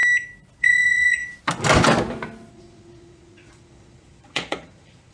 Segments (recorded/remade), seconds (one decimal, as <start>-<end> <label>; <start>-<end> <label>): 0.0-0.6 recorded; 0.6-1.2 remade; 1.2-2.5 recorded; 2.5-5.1 remade